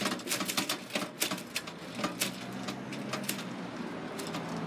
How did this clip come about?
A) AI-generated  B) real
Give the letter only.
B